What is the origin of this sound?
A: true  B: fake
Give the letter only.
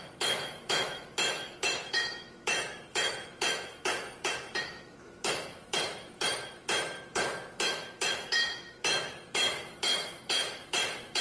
B